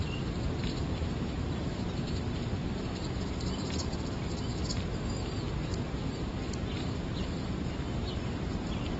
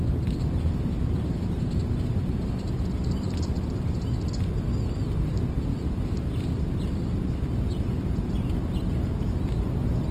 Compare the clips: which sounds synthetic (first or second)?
first